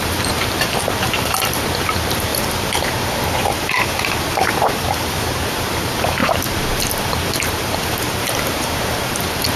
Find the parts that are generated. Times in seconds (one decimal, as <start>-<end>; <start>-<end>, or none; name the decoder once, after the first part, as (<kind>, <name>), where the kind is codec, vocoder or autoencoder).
0.0-9.6 (vocoder, BigVGAN v2)